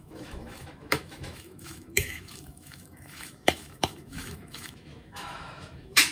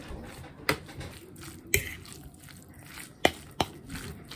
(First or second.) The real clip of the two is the second